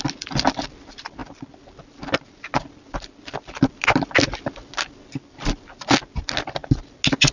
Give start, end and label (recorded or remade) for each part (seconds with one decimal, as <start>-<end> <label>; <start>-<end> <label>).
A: 0.0-7.3 recorded